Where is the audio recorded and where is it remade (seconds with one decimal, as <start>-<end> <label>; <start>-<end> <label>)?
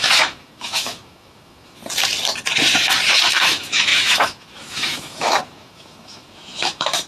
0.0-1.8 remade; 1.8-3.3 recorded; 3.3-7.1 remade